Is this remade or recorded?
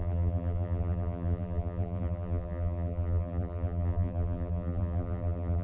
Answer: remade